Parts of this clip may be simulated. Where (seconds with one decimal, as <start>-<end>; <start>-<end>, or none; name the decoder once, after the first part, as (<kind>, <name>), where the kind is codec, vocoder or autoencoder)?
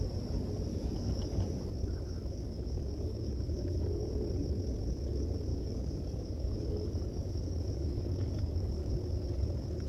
0.7-1.4 (codec, DAC); 2.2-4.1; 5.5-8.9